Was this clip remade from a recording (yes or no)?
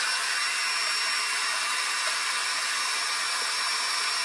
no